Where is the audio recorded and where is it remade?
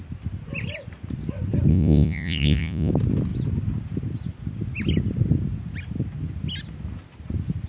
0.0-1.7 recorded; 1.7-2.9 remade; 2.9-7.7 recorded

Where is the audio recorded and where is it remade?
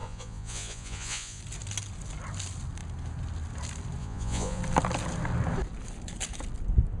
0.0-1.4 remade; 1.4-4.0 recorded; 4.0-4.6 remade; 4.6-7.0 recorded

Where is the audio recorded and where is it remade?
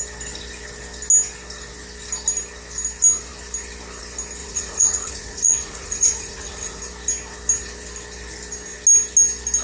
0.0-4.4 recorded; 4.4-6.8 remade; 6.8-9.6 recorded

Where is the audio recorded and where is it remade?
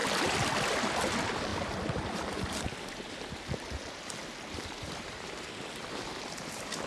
0.0-6.9 recorded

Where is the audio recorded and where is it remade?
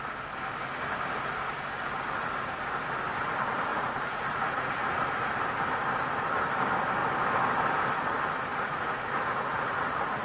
0.0-3.7 recorded; 3.7-5.3 remade; 5.3-8.5 recorded; 8.5-10.2 remade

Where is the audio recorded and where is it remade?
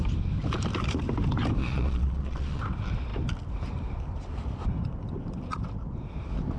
0.0-1.6 recorded; 1.6-2.6 remade; 2.6-6.6 recorded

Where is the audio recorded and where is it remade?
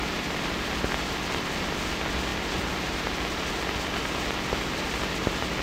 0.0-5.6 recorded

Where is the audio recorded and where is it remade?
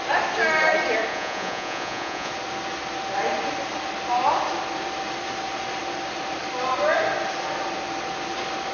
0.0-1.1 recorded; 1.1-2.3 remade; 2.3-8.7 recorded